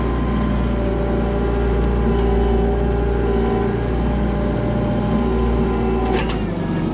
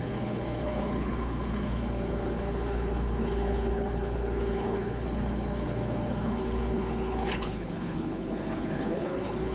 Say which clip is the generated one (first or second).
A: second